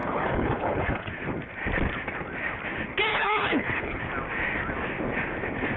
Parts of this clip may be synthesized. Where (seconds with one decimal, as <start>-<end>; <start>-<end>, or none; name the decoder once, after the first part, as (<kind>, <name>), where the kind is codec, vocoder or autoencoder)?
0.0-1.1 (codec, HILCodec); 3.1-4.0